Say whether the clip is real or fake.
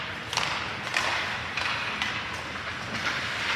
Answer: real